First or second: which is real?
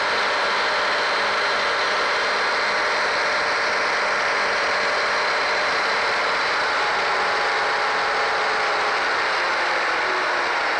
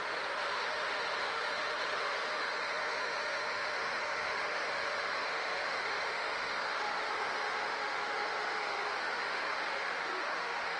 first